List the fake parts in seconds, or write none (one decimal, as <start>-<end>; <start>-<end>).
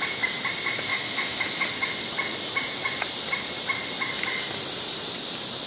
0.9-1.7